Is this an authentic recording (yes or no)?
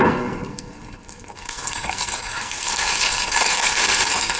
no